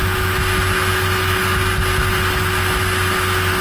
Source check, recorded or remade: recorded